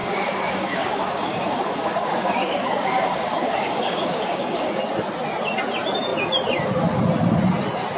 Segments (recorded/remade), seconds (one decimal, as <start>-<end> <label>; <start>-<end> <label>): 0.0-4.8 remade; 4.8-8.0 recorded